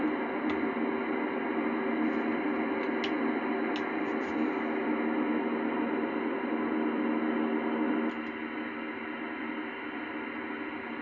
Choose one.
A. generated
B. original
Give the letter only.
B